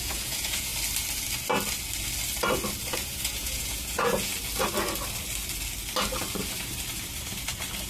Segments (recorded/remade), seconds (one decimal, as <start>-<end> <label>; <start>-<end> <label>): 0.0-0.7 remade; 0.7-2.8 recorded; 2.8-4.3 remade; 4.3-7.9 recorded